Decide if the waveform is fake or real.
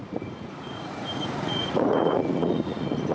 fake